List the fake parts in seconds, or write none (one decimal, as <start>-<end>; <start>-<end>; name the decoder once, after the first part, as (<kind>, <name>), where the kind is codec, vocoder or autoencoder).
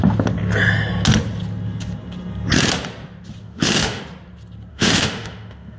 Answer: 3.4-4.0 (autoencoder, DAC-VAE); 4.7-5.8